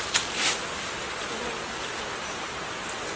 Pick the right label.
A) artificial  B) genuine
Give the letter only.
B